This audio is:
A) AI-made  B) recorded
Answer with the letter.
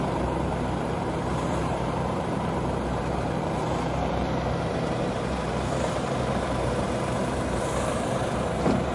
A